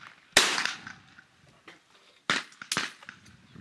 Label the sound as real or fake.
real